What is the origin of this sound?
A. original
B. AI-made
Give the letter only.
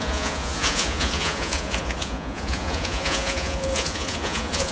B